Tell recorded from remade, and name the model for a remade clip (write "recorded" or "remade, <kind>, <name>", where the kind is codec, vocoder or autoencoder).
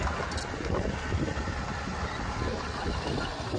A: recorded